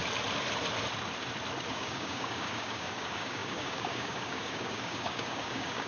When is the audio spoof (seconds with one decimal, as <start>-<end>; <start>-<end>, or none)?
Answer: 1.7-5.9